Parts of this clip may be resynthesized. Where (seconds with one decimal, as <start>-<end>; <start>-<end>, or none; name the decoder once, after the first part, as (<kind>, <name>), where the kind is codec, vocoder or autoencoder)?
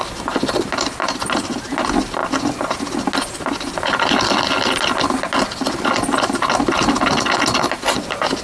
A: none